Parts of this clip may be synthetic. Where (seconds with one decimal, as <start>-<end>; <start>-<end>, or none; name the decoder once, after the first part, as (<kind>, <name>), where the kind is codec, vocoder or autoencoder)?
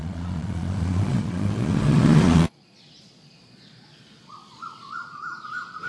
0.0-5.9 (vocoder, Vocos)